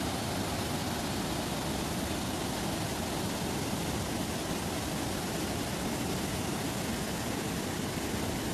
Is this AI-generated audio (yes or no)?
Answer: no